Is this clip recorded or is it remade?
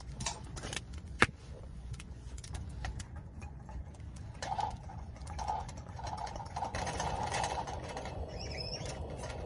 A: remade